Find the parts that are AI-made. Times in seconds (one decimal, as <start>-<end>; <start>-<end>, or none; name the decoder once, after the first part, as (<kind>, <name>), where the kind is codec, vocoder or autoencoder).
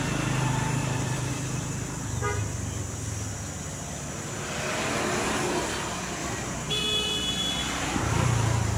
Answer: 0.8-1.3 (vocoder, BigVGAN v2); 6.2-6.8; 7.6-8.1